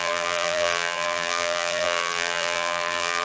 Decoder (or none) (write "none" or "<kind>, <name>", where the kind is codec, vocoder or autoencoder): vocoder, BigVGAN v2